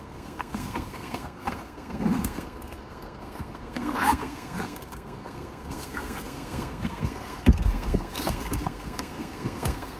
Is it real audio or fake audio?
fake